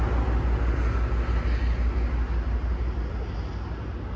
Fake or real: real